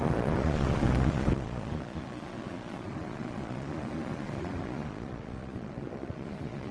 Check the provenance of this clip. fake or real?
fake